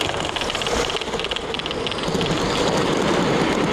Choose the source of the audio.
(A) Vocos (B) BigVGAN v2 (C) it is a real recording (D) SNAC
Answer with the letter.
C